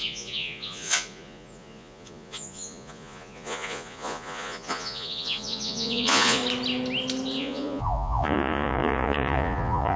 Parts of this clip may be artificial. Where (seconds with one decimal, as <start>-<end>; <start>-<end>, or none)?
0.0-6.4; 7.4-10.0